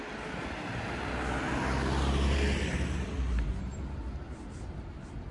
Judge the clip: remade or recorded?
recorded